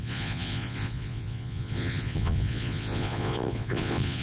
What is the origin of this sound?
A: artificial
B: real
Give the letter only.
A